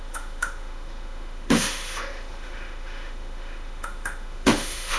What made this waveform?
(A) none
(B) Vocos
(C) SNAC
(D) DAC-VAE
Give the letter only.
D